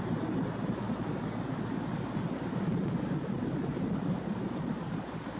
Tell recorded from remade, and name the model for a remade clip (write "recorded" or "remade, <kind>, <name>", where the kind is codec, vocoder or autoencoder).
recorded